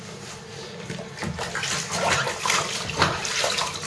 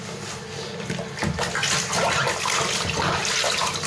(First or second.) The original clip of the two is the second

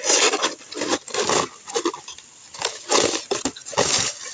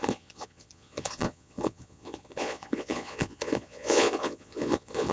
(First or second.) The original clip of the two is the first